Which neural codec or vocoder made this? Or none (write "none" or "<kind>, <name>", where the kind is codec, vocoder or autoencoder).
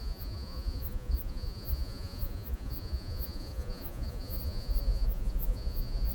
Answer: vocoder, Vocos